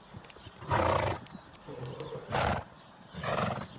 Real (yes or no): no